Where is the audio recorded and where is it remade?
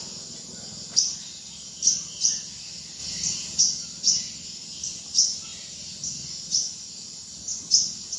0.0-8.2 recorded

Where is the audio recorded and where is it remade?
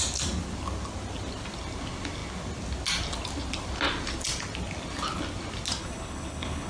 0.0-5.8 recorded; 5.8-6.7 remade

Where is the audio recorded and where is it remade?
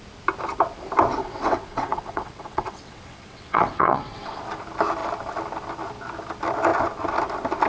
0.0-1.2 recorded; 1.2-4.4 remade; 4.4-7.7 recorded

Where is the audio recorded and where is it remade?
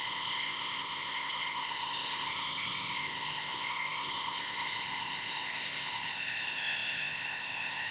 0.0-7.9 remade